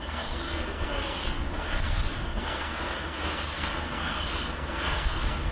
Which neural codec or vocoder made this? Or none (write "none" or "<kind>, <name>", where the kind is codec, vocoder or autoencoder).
codec, SNAC